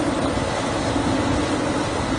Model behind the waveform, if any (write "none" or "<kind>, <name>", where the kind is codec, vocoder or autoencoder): none